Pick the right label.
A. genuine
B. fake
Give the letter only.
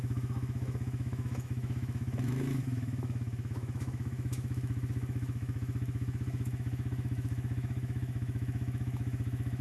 B